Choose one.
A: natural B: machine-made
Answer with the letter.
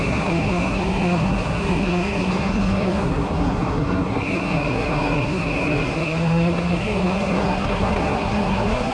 B